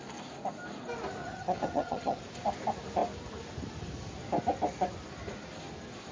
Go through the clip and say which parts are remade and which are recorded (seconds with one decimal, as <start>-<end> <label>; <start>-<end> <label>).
0.0-1.2 recorded; 1.2-2.2 remade; 2.2-6.1 recorded